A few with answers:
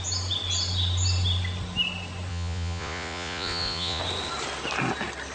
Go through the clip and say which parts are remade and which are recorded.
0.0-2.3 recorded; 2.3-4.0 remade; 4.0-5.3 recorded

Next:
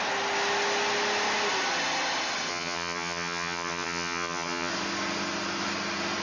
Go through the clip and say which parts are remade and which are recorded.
0.0-2.5 recorded; 2.5-4.7 remade; 4.7-6.2 recorded